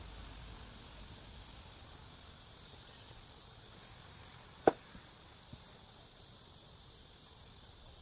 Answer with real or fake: real